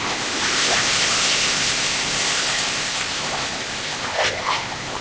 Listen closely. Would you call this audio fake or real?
fake